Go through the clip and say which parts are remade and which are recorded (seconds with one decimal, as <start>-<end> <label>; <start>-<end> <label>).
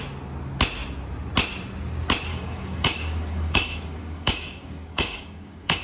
0.0-2.3 recorded; 2.3-5.8 remade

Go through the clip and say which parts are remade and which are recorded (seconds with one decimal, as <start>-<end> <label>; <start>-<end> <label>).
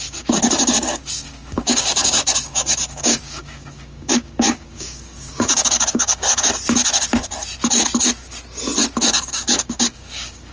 0.0-6.5 remade; 6.5-9.1 recorded; 9.1-10.5 remade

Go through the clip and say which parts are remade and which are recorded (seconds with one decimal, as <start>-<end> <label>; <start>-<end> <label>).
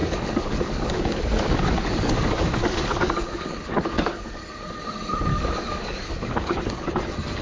0.0-4.4 remade; 4.4-5.3 recorded; 5.3-6.9 remade; 6.9-7.4 recorded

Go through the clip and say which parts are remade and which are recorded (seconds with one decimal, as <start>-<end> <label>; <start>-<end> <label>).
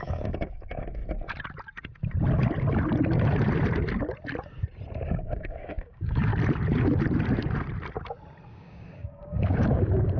0.0-1.0 remade; 1.0-5.0 recorded; 5.0-6.3 remade; 6.3-8.5 recorded; 8.5-10.2 remade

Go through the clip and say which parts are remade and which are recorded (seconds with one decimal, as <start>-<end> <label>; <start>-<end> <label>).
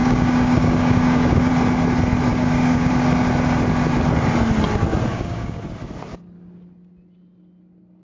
0.0-1.5 remade; 1.5-2.3 recorded; 2.3-2.9 remade; 2.9-5.1 recorded; 5.1-5.6 remade; 5.6-8.0 recorded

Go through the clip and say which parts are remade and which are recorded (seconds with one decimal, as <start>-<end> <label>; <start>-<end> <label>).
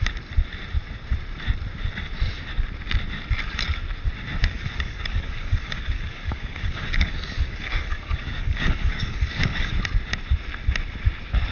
0.0-4.4 recorded; 4.4-9.7 remade; 9.7-11.5 recorded